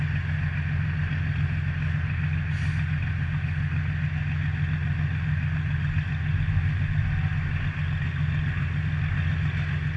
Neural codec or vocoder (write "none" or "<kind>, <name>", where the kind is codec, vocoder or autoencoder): none